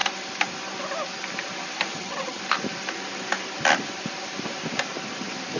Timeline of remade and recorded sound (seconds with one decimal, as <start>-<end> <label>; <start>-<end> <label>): 0.0-1.9 recorded; 1.9-2.4 remade; 2.4-5.6 recorded